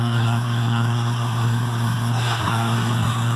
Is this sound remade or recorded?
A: remade